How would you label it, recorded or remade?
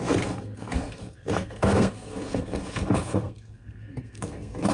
remade